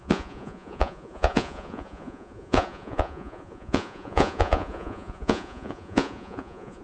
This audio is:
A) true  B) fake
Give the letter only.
B